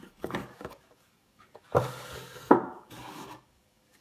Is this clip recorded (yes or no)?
no